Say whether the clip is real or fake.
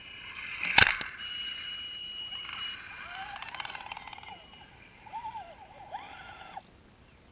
real